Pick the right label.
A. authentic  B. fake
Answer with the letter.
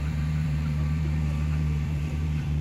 B